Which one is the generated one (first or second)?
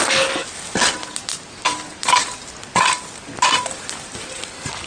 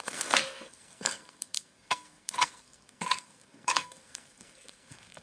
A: second